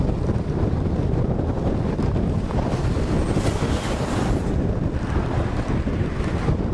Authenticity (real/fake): fake